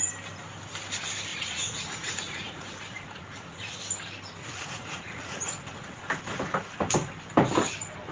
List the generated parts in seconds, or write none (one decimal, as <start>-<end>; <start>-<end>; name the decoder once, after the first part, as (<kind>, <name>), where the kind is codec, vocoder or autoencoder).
1.3-3.8 (vocoder, Vocos); 4.4-6.1